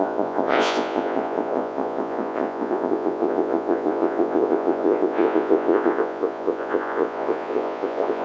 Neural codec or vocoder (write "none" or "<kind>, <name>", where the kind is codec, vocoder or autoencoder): vocoder, Vocos